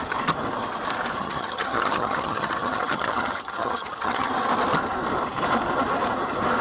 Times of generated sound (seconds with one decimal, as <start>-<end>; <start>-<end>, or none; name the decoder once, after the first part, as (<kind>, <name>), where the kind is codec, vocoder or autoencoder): 1.2-4.3 (vocoder, HiFi-GAN)